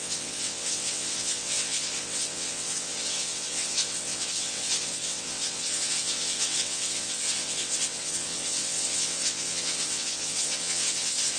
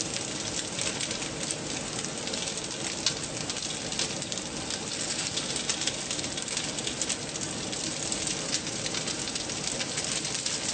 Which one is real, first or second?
second